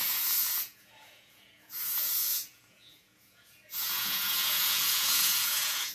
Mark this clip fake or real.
fake